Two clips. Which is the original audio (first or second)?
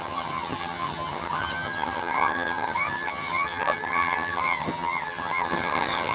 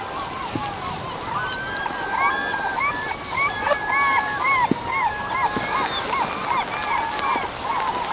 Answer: second